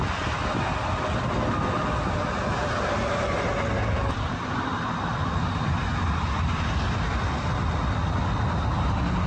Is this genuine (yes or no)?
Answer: yes